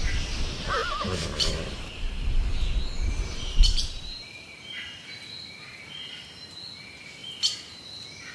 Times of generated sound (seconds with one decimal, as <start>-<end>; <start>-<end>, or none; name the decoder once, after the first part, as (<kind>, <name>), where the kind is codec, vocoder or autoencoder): 0.8-5.0 (vocoder, BigVGAN v2); 7.2-7.8

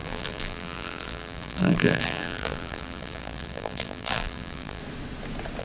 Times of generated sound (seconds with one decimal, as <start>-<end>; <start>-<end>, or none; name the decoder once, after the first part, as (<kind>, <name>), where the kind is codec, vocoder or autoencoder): 0.0-4.8 (vocoder, BigVGAN v2)

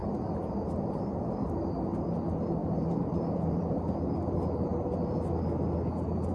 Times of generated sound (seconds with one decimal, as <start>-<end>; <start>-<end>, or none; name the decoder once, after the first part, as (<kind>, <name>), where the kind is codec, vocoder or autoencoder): 1.0-4.7 (vocoder, BigVGAN v2)